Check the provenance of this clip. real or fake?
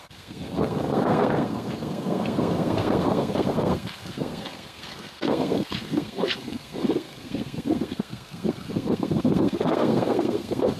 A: fake